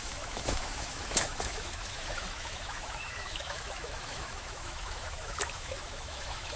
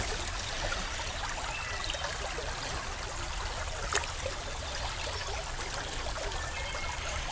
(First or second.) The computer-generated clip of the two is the first